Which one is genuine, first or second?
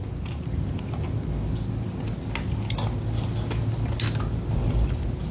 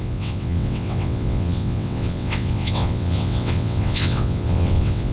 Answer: first